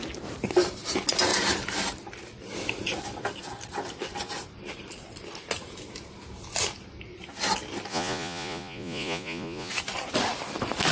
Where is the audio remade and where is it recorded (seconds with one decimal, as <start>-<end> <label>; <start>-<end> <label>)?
0.0-7.9 recorded; 7.9-9.7 remade; 9.7-10.9 recorded